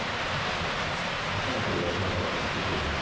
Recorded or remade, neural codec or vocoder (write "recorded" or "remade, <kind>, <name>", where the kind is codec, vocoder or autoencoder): recorded